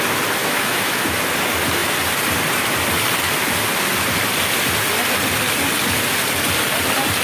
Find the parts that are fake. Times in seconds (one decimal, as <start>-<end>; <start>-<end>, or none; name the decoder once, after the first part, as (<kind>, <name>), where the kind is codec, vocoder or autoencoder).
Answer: 0.4-1.0 (autoencoder, DAC-VAE)